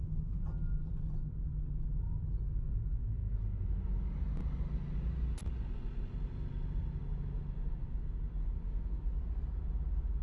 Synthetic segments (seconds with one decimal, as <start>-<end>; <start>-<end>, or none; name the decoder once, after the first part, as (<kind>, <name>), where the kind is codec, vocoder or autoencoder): none